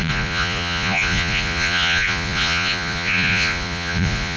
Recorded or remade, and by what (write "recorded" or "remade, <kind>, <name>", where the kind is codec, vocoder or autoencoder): remade, vocoder, Vocos